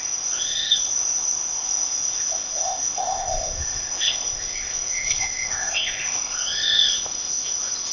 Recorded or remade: remade